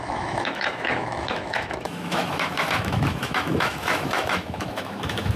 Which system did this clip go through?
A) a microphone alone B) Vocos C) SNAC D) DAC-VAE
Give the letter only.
D